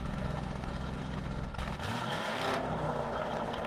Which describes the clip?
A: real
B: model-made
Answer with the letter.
B